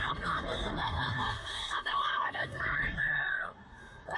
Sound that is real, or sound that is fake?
fake